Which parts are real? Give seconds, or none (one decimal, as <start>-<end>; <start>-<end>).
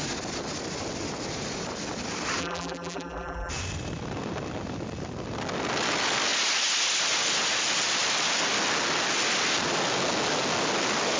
0.0-2.4; 3.5-11.2